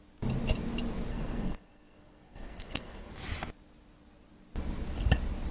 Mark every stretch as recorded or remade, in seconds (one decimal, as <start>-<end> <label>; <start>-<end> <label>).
0.0-1.1 recorded; 1.1-3.1 remade; 3.1-5.5 recorded